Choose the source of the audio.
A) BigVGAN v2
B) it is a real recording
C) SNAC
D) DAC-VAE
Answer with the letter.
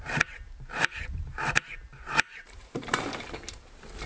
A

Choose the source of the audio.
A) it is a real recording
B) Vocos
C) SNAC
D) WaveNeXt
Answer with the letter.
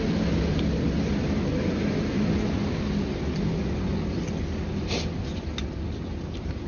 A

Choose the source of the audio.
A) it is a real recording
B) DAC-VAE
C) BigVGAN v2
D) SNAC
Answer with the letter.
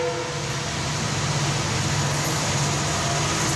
A